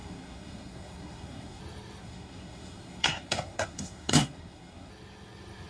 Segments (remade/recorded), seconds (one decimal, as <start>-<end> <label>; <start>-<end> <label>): 0.0-1.6 remade; 1.6-2.0 recorded; 2.0-4.9 remade; 4.9-5.7 recorded